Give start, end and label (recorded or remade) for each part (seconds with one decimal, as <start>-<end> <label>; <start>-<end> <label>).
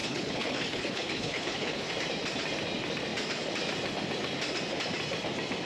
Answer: 0.0-1.9 remade; 1.9-5.7 recorded